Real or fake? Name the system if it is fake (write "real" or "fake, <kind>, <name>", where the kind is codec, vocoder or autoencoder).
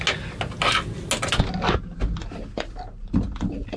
real